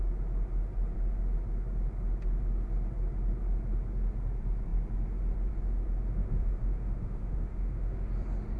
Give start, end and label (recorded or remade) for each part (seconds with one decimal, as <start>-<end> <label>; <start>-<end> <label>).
0.0-6.2 recorded; 6.2-8.1 remade; 8.1-8.6 recorded